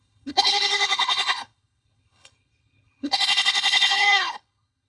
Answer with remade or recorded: remade